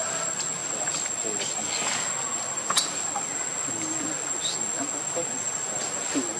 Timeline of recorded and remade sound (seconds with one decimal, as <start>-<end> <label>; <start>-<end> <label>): 0.0-6.4 recorded